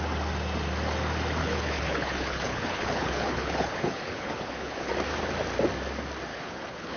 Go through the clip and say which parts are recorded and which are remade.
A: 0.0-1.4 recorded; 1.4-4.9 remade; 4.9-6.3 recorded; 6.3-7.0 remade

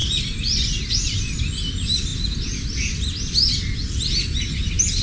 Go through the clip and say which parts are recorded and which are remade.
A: 0.0-5.0 recorded

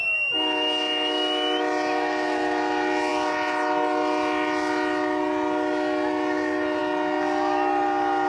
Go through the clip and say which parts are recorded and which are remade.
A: 0.0-8.3 recorded

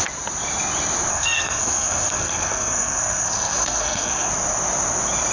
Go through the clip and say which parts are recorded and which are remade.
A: 0.0-1.1 recorded; 1.1-4.3 remade; 4.3-5.3 recorded